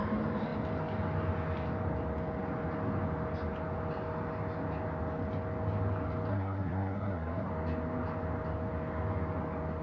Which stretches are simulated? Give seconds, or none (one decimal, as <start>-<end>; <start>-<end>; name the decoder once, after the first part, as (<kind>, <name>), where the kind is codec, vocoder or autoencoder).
6.3-7.5 (codec, SNAC)